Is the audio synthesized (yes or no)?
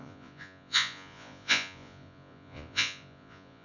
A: yes